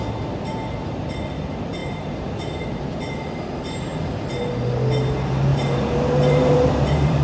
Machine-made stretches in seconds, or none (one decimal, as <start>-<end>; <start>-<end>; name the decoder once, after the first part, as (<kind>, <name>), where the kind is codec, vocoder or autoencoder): 1.8-2.9 (vocoder, BigVGAN v2); 5.5-7.2